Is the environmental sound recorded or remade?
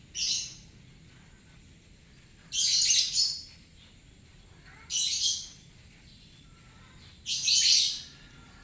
recorded